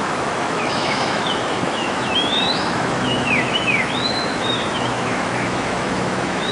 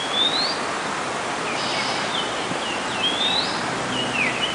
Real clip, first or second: second